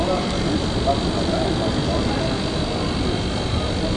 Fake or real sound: real